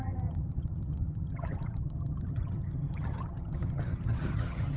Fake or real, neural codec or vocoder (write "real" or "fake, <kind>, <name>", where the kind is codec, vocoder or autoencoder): fake, vocoder, HiFi-GAN